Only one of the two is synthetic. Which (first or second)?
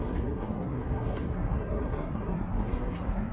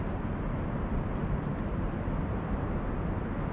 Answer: first